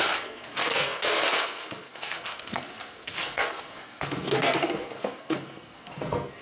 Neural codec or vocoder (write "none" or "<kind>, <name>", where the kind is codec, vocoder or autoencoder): codec, SNAC